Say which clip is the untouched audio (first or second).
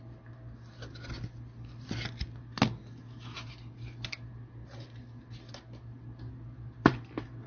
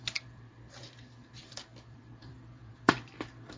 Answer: first